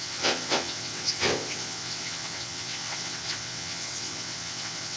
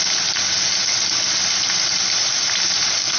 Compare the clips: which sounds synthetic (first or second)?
first